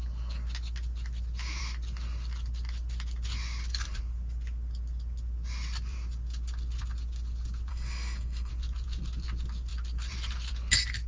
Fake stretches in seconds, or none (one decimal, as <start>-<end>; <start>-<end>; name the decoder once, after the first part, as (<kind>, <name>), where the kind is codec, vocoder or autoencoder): 7.7-8.5 (codec, SNAC)